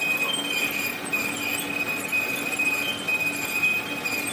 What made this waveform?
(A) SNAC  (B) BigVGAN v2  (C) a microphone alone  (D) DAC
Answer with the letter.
C